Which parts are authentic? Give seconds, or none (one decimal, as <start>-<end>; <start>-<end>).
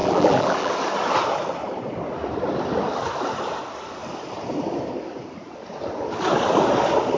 0.7-7.2